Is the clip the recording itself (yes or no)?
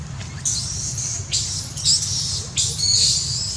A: yes